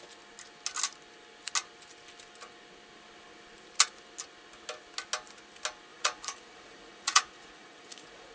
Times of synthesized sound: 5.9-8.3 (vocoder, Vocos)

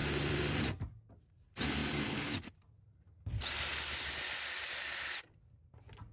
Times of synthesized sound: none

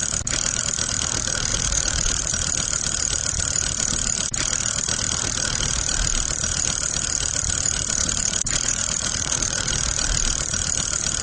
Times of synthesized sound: 1.5-2.3 (vocoder, Vocos); 8.0-9.7